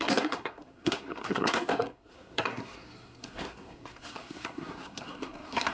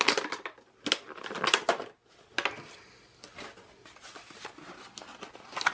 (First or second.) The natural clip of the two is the second